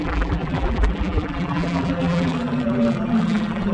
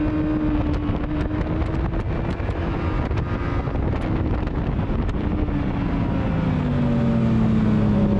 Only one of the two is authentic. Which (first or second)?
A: second